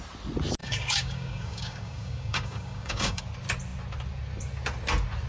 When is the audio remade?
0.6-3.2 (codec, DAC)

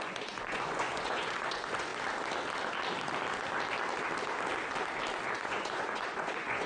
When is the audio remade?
0.0-1.9 (vocoder, Vocos); 5.3-6.7

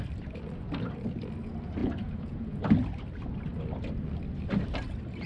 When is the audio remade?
1.8-2.6 (vocoder, Vocos)

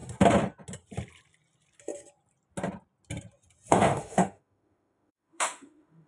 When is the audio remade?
3.7-6.1 (autoencoder, DAC-VAE)

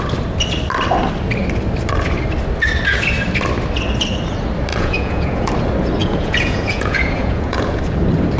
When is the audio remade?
4.7-5.5 (vocoder, Vocos); 6.0-7.8

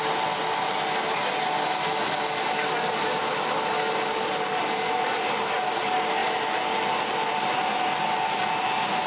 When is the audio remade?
none

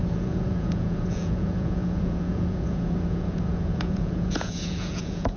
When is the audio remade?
0.0-5.4 (vocoder, Vocos)

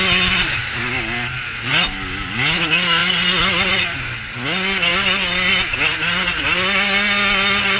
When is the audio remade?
none